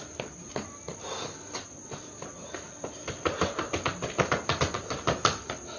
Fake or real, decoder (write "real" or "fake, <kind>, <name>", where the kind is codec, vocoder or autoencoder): real